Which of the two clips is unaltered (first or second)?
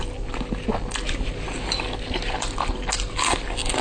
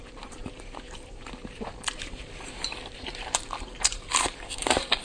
first